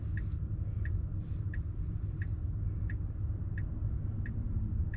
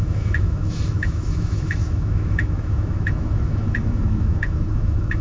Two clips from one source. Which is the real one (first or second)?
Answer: first